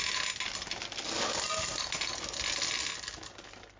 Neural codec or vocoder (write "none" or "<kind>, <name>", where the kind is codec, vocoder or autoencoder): none